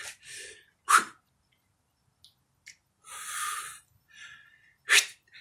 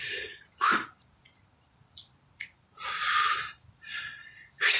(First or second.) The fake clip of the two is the second